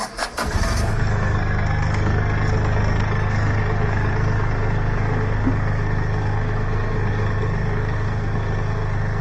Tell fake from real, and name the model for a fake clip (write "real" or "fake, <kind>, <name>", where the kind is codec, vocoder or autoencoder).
fake, codec, SNAC